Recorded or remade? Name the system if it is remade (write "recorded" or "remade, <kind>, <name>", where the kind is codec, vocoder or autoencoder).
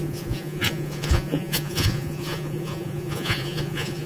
remade, vocoder, Vocos